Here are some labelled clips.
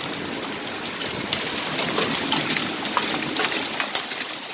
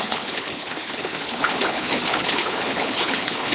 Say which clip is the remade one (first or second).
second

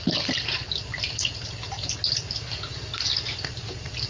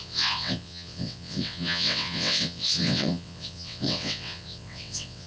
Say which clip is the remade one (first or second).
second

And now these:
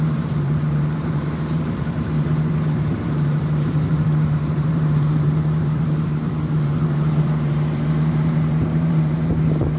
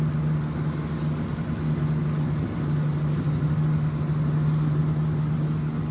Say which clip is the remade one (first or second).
first